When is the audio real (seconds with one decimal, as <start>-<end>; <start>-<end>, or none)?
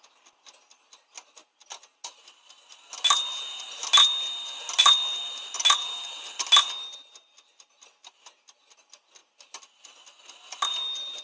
0.0-11.2